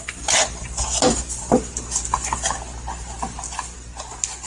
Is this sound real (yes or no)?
yes